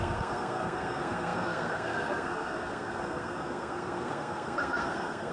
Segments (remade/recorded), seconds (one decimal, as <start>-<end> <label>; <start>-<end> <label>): 0.0-5.3 remade